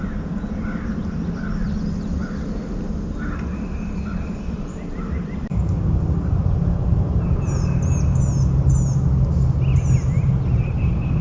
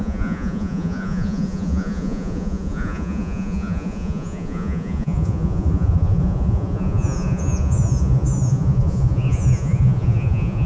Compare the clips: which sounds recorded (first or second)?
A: first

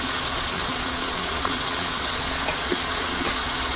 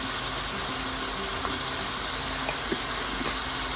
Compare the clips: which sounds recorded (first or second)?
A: second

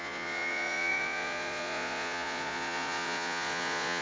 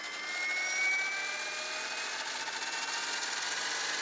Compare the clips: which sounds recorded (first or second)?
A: second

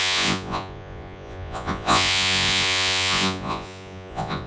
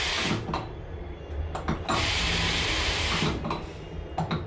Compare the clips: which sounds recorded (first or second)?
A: second